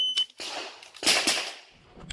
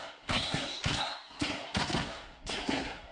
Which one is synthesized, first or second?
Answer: second